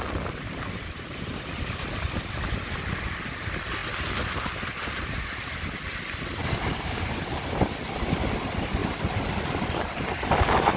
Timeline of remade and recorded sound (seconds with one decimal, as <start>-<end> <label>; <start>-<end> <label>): 0.0-6.7 recorded; 6.7-7.2 remade; 7.2-10.8 recorded